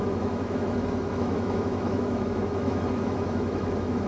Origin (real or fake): fake